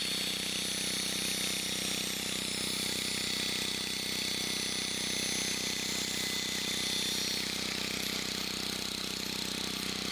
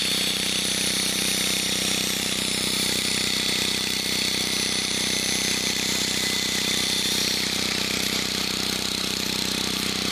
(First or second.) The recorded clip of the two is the first